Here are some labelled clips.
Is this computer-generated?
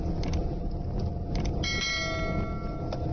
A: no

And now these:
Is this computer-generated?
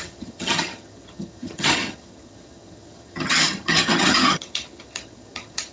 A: yes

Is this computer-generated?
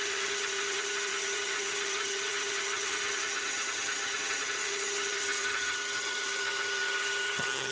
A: yes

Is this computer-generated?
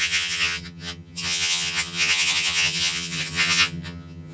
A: yes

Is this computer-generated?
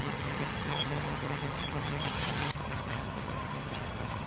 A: yes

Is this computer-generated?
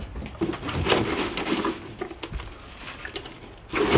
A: no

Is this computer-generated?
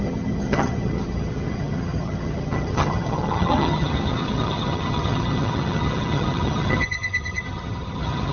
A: yes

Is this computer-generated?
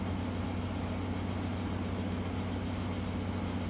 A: no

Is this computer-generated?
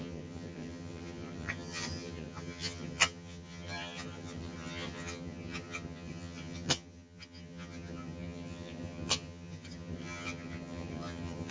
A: yes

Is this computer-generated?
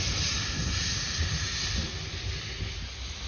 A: no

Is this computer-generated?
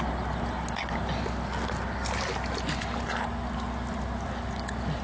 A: no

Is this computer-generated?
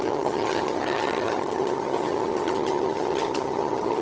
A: yes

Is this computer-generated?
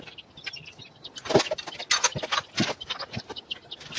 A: no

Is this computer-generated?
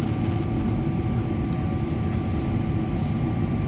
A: no